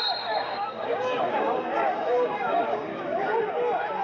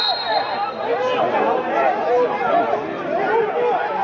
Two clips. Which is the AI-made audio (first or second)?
first